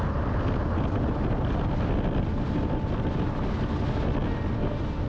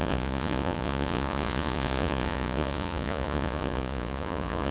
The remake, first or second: second